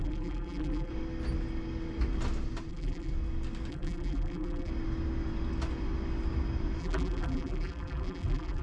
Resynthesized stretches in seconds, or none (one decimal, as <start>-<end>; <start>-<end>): 0.0-0.9; 2.7-3.1; 3.7-4.7; 6.8-8.6